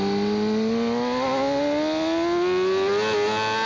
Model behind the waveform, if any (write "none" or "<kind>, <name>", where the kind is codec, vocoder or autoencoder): none